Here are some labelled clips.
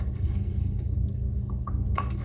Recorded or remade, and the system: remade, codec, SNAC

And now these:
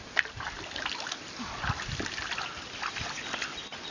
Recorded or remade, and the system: recorded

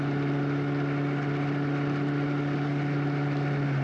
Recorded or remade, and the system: recorded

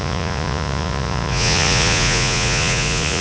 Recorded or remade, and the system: remade, vocoder, Vocos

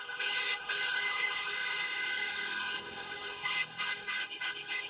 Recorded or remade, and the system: remade, codec, HILCodec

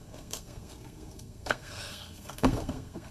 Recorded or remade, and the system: remade, codec, SNAC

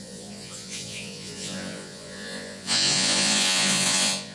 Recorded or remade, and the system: remade, vocoder, Vocos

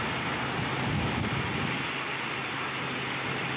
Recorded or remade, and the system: recorded